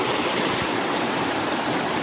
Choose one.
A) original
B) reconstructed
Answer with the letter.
B